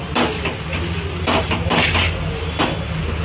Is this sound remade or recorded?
recorded